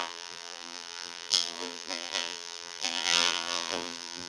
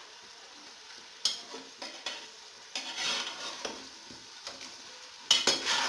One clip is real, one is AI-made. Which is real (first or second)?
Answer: second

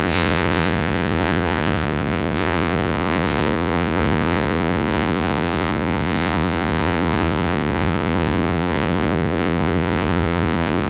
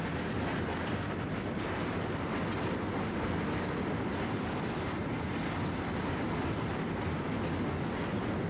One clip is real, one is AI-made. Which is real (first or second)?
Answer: second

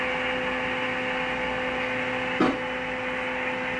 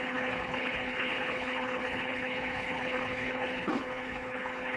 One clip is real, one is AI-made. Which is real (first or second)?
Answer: first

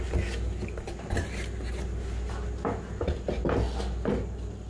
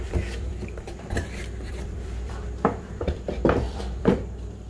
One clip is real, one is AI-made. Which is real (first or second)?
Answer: first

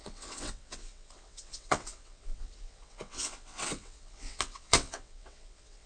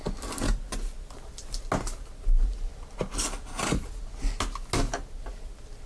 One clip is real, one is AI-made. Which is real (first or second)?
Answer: second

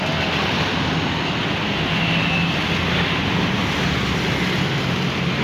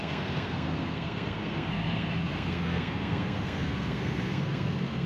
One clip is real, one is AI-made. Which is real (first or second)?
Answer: first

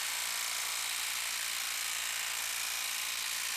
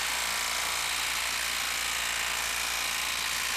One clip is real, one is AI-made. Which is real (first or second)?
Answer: second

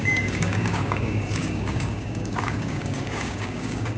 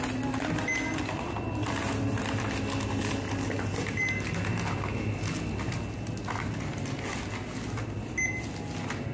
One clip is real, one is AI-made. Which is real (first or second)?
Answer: second